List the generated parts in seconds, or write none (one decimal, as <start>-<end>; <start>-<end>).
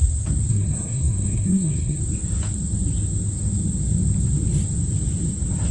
0.5-2.0